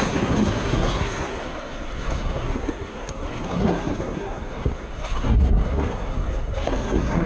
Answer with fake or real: fake